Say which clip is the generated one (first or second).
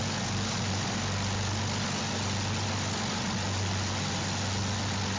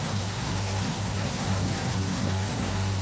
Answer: second